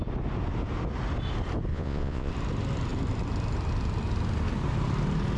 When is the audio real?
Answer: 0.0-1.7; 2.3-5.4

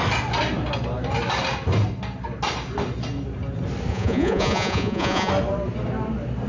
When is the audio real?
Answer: 0.0-3.9; 5.3-6.5